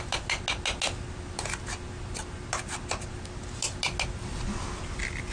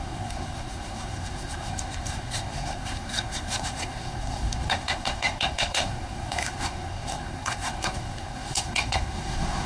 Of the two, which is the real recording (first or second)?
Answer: first